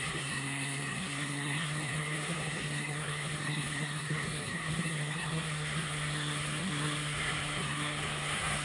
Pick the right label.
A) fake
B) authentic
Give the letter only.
A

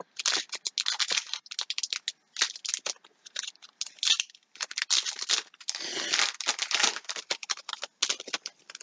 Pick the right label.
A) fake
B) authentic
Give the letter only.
B